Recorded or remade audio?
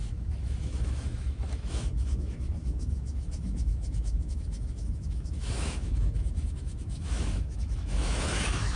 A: remade